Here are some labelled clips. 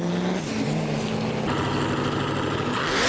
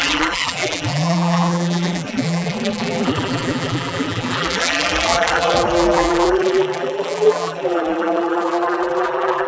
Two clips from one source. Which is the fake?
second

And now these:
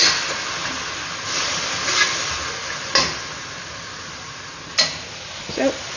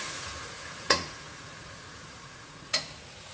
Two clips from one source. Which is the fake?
second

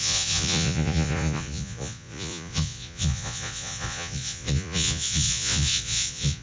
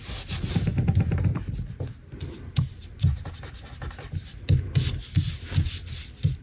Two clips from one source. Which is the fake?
first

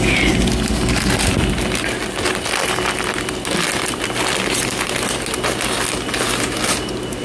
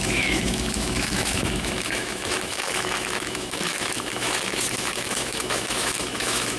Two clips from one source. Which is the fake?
second